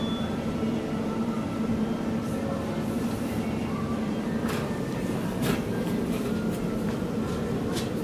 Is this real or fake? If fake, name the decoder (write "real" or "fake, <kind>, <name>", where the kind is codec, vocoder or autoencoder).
fake, vocoder, BigVGAN v2